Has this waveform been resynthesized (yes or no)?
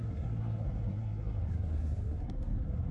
yes